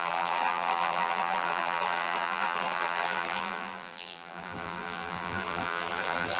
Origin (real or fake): fake